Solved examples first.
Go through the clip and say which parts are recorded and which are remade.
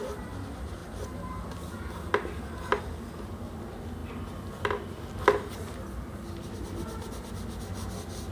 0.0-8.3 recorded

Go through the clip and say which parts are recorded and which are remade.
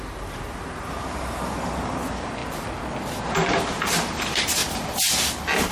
0.0-2.4 remade; 2.4-3.3 recorded; 3.3-4.6 remade; 4.6-5.7 recorded